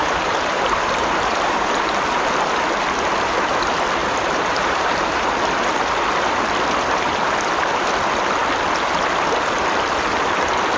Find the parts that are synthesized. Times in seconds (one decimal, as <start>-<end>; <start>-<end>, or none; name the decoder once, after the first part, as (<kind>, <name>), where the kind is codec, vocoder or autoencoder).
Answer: 0.0-1.9 (vocoder, BigVGAN v2); 4.0-5.4